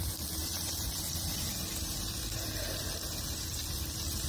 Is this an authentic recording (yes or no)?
no